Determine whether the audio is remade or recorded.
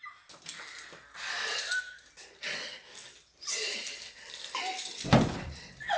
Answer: recorded